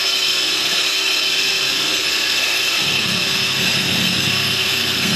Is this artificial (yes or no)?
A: yes